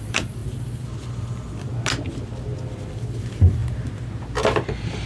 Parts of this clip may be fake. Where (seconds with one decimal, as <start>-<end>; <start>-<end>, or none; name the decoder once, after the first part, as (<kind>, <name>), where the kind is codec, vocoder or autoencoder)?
0.0-0.4 (vocoder, BigVGAN v2); 2.9-3.6